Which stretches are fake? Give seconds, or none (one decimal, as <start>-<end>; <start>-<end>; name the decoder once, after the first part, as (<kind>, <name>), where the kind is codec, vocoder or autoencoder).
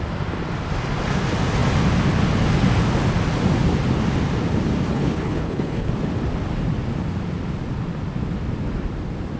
4.9-5.9 (codec, HILCodec)